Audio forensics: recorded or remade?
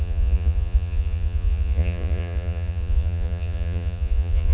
remade